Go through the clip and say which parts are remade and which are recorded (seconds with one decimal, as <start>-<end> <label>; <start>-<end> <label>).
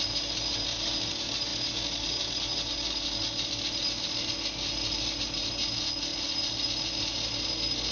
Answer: 0.0-7.9 recorded